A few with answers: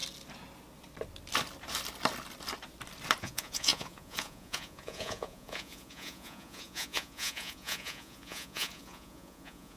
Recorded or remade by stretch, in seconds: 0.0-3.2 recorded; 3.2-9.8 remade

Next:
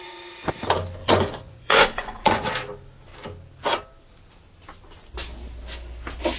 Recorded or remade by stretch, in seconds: 0.0-1.0 recorded; 1.0-2.5 remade; 2.5-6.4 recorded